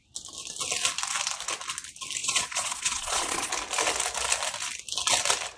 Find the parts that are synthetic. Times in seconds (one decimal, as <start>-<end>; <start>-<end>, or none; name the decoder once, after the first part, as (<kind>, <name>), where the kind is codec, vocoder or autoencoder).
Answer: 2.2-3.5 (vocoder, Vocos)